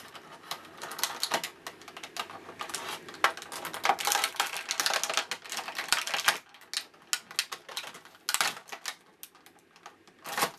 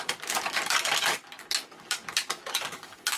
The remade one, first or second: second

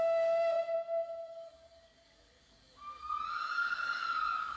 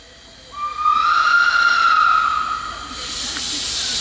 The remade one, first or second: first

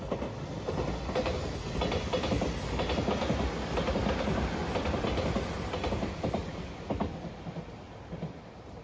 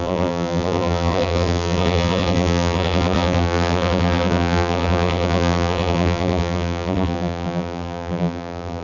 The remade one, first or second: second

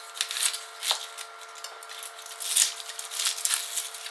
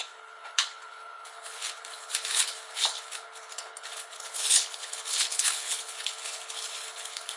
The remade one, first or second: second